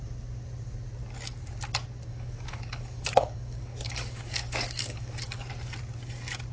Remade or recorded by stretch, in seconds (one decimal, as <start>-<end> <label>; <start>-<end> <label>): 0.0-2.1 recorded; 2.1-5.5 remade; 5.5-6.5 recorded